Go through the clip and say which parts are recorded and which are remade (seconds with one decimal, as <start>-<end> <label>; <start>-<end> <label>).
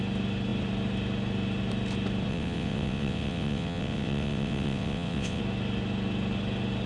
0.0-2.3 recorded; 2.3-5.4 remade; 5.4-6.9 recorded